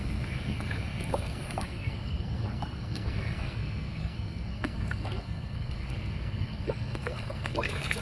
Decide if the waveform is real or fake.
fake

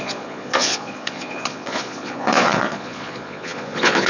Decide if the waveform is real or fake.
fake